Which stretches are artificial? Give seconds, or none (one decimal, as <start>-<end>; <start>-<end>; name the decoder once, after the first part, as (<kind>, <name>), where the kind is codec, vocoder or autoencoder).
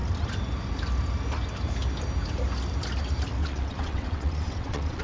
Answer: 3.4-5.0 (vocoder, WaveNeXt)